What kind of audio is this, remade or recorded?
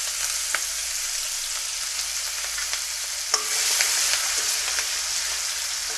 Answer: recorded